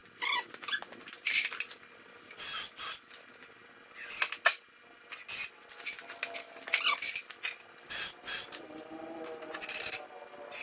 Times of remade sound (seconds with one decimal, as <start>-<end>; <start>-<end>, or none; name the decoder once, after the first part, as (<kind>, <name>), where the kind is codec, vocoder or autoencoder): 0.0-1.8 (vocoder, BigVGAN v2)